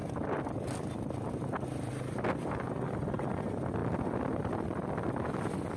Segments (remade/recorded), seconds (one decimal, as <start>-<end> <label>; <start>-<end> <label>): 0.0-5.8 recorded